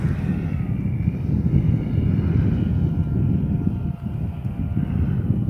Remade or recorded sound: recorded